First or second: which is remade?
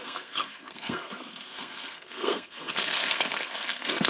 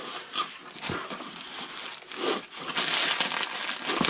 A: first